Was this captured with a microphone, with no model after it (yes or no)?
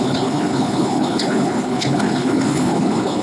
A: no